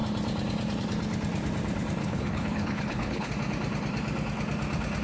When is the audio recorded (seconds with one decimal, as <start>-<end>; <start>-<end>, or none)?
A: 0.0-2.0; 3.3-5.0